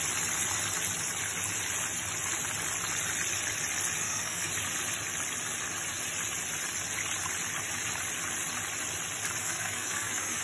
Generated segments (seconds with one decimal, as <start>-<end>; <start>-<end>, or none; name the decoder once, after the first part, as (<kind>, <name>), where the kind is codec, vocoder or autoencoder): 4.0-4.5 (codec, SNAC); 9.4-10.4